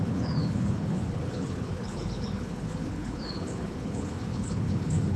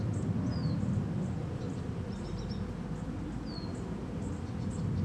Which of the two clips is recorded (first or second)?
second